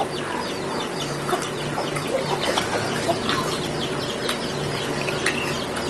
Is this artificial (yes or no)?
no